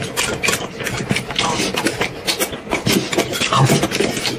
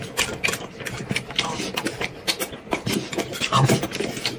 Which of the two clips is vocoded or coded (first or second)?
second